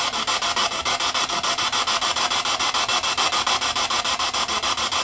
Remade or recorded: recorded